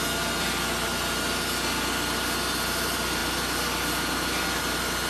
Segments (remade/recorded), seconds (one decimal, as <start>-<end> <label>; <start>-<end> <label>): 0.0-5.1 recorded